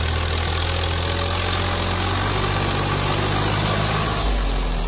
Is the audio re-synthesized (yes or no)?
no